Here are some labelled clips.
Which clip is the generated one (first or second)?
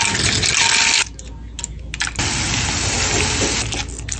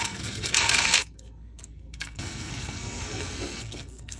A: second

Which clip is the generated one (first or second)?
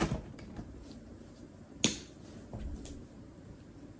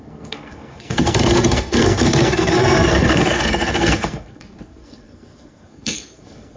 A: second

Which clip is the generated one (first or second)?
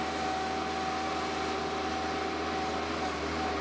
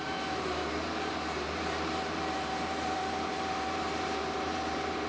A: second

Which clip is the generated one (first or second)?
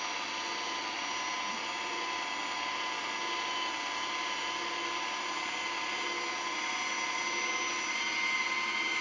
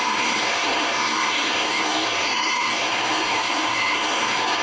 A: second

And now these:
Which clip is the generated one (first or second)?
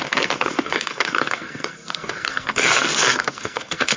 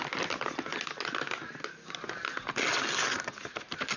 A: first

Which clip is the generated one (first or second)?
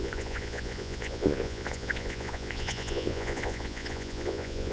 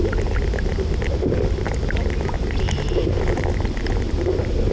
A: first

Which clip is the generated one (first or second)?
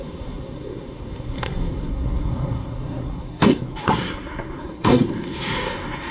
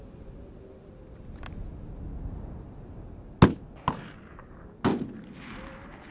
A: first